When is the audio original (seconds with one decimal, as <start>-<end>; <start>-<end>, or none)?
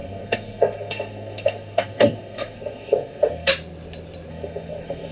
3.5-4.3